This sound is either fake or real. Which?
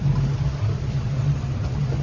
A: real